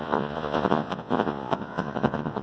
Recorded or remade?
remade